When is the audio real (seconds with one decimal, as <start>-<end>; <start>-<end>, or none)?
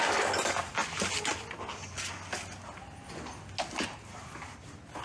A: 0.0-5.0